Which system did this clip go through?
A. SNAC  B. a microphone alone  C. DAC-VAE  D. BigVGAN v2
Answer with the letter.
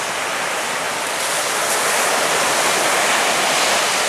B